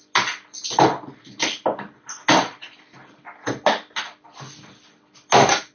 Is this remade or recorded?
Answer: recorded